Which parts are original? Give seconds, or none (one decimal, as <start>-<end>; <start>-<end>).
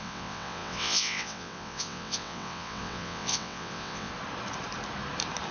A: 4.1-5.5